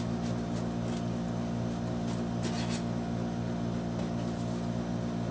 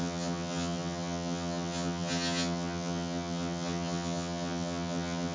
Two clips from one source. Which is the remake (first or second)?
second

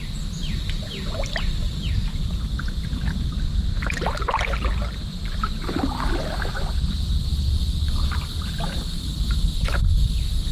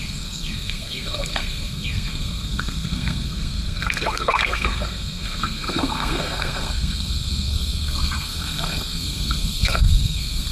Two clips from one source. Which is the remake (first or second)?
second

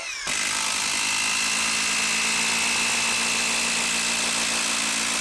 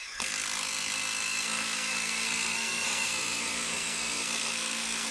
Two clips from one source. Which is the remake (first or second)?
second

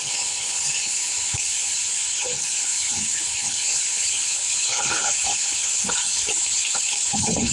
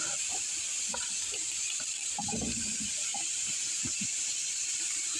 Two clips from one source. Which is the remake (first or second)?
first